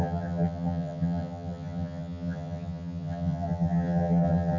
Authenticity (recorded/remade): remade